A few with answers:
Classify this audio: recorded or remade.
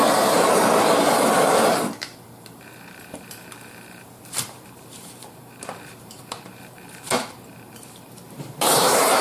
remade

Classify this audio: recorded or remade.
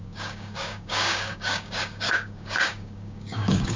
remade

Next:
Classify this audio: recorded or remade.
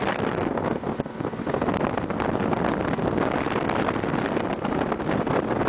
recorded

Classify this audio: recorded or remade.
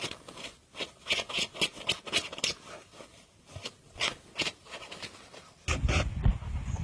recorded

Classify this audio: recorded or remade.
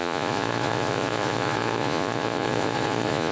remade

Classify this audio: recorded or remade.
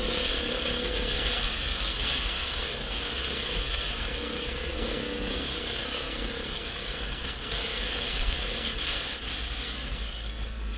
remade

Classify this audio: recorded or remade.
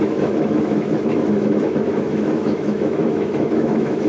remade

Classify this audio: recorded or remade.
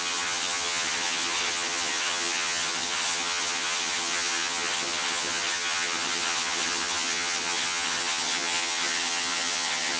remade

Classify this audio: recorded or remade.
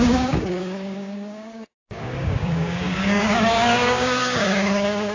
remade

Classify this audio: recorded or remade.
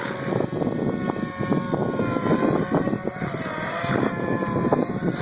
recorded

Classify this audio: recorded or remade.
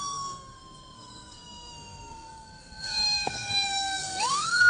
remade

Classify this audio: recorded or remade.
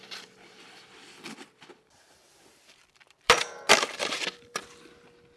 remade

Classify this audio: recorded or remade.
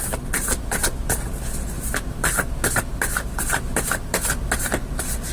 recorded